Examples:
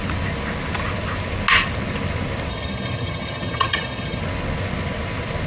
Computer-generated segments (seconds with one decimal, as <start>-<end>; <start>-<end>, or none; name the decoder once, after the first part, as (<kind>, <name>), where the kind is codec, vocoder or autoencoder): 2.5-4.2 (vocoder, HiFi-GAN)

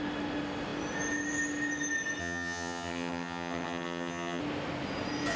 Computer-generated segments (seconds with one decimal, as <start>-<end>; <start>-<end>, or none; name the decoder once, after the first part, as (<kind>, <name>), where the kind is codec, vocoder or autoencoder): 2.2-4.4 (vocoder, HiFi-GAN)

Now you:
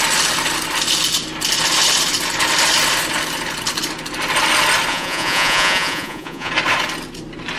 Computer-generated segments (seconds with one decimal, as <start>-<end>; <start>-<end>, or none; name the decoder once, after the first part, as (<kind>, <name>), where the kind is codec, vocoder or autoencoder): 4.9-6.5 (vocoder, Vocos)

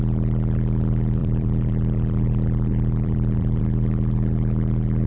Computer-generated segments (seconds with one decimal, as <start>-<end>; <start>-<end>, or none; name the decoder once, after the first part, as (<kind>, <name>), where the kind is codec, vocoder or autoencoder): 1.2-3.6 (vocoder, BigVGAN v2)

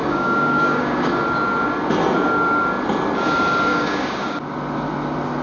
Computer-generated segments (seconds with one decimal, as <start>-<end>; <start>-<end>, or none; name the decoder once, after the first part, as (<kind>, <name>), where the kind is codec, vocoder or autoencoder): 0.0-1.1 (codec, DAC); 3.7-4.4

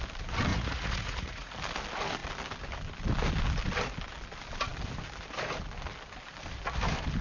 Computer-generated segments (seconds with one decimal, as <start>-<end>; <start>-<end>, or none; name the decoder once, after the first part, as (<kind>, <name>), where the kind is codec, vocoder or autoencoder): 0.5-1.5 (vocoder, Vocos)